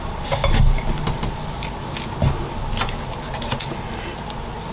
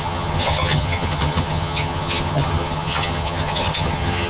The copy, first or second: second